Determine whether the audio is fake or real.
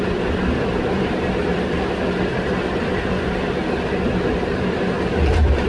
real